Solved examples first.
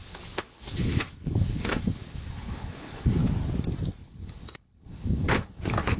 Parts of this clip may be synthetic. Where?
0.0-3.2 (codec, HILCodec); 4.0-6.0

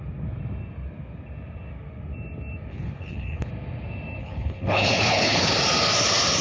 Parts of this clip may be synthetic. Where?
2.7-3.5 (codec, HILCodec); 4.2-5.5

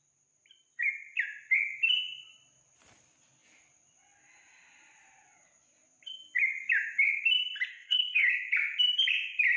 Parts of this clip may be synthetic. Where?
7.7-8.3 (codec, HILCodec)

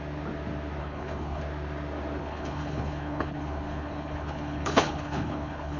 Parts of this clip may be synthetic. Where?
0.8-1.4 (codec, HILCodec); 2.2-5.8

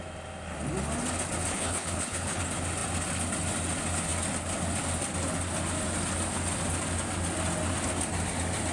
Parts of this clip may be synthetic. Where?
1.5-2.4 (codec, HILCodec)

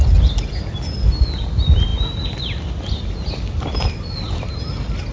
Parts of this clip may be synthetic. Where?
none

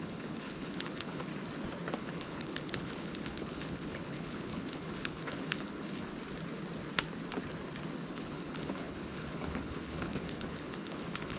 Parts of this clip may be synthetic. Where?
0.0-1.3 (codec, HILCodec); 2.0-6.1; 8.1-11.4